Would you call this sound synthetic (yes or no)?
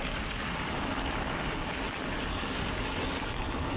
no